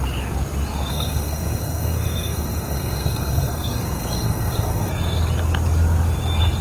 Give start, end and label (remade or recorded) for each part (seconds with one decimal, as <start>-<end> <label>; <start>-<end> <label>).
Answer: 0.0-0.9 recorded; 0.9-4.9 remade; 4.9-6.6 recorded